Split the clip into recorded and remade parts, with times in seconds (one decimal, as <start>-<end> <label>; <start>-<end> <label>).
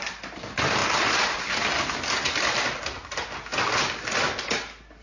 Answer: 0.0-5.0 recorded